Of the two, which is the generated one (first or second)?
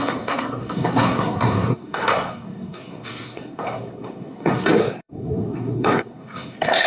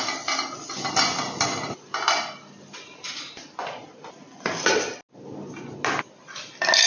first